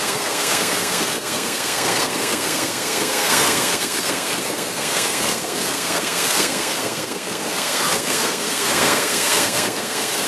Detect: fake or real fake